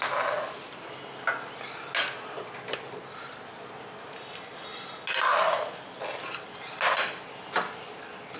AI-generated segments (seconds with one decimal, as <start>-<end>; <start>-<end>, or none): none

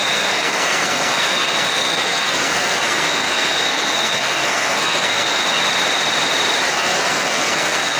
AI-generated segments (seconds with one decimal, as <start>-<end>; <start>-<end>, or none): 0.0-5.4; 6.7-8.0